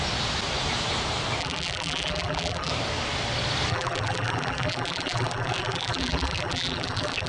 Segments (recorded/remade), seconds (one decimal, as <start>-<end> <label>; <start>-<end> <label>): 0.0-1.4 recorded; 1.4-2.7 remade; 2.7-3.7 recorded; 3.7-7.3 remade